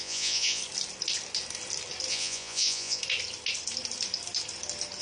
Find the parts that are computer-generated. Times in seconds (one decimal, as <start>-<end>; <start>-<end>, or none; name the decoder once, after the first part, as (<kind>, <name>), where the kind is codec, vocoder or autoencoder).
0.0-0.6 (vocoder, Vocos); 2.1-3.0